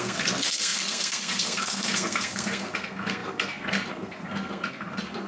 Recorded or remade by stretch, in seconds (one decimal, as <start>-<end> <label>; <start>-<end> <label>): 0.0-5.3 remade